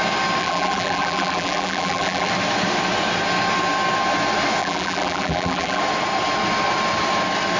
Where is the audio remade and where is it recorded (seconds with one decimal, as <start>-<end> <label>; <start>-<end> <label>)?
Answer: 0.0-0.4 recorded; 0.4-2.3 remade; 2.3-4.6 recorded; 4.6-5.8 remade; 5.8-7.6 recorded